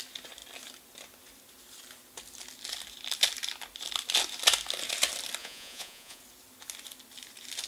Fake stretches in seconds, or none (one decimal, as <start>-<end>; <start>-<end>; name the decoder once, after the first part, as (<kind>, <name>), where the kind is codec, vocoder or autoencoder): 5.4-6.2 (vocoder, Vocos)